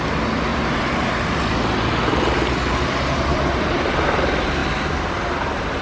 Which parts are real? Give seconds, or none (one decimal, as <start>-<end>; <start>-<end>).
0.0-3.3; 3.9-5.8